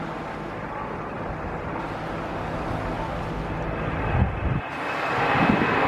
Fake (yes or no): no